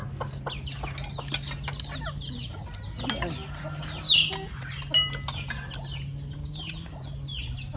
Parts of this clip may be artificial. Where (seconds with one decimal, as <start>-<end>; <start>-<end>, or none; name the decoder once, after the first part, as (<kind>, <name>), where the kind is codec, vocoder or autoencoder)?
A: none